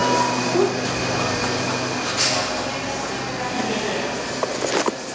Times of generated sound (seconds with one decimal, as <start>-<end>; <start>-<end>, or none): none